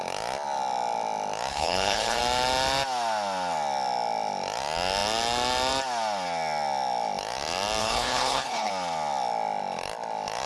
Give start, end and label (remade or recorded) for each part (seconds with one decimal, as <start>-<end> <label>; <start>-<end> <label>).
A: 0.0-1.5 recorded; 1.5-2.2 remade; 2.2-7.8 recorded; 7.8-8.7 remade; 8.7-10.5 recorded